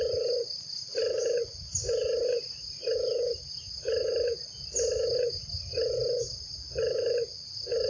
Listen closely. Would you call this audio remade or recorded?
recorded